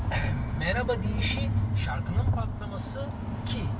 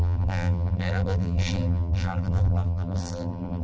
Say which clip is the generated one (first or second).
second